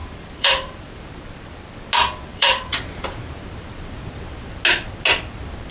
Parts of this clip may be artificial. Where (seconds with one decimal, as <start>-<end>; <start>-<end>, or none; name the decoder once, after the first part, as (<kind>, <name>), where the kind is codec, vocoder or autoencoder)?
0.0-1.1 (vocoder, BigVGAN v2); 2.3-4.6